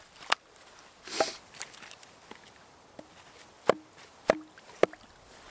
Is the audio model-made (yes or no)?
no